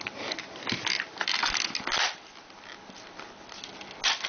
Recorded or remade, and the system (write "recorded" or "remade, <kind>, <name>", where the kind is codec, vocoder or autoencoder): recorded